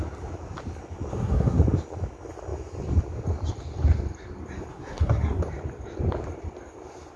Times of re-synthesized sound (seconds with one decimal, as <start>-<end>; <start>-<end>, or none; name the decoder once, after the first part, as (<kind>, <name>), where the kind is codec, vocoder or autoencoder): 1.1-1.6 (codec, SNAC); 4.7-5.4